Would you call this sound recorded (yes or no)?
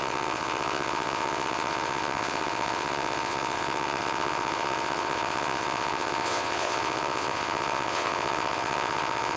no